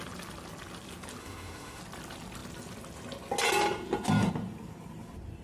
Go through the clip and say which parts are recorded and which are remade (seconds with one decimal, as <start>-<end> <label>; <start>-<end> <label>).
0.0-1.2 recorded; 1.2-1.8 remade; 1.8-5.4 recorded